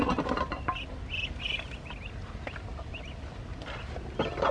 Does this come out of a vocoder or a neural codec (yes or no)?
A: no